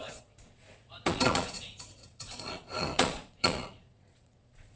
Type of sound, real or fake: fake